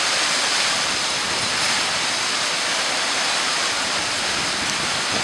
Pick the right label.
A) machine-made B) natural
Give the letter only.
B